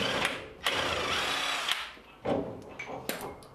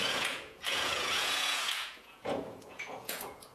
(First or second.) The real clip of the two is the first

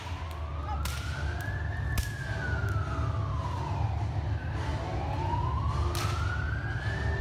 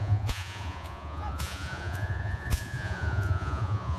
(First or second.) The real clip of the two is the first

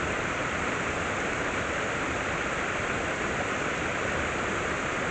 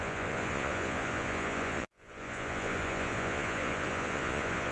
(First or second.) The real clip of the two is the first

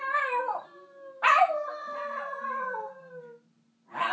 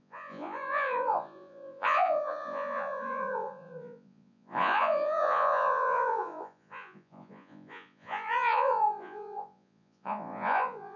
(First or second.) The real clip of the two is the first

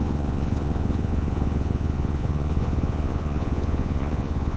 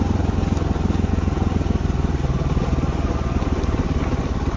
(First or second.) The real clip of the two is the second